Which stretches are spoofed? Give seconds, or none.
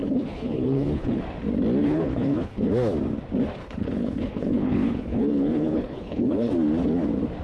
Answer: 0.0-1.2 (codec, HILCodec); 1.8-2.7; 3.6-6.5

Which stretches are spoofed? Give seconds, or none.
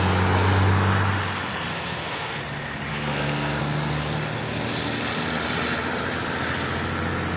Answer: 1.7-2.4 (codec, SNAC); 2.9-3.6